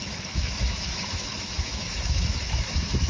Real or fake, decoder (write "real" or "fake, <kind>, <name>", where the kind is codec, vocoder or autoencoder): fake, autoencoder, DAC-VAE